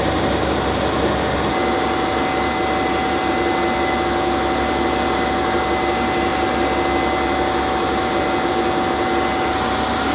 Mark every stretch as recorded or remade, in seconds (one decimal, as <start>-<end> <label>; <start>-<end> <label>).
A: 0.0-10.1 recorded